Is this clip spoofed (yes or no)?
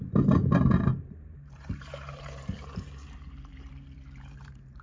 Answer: yes